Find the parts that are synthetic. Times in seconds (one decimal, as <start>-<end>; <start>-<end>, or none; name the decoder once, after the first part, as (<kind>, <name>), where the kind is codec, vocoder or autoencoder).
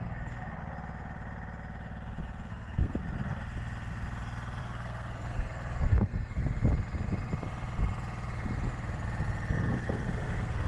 0.0-0.6 (codec, SNAC); 2.5-3.0; 4.6-6.4; 9.7-10.7